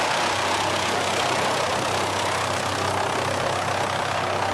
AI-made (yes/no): no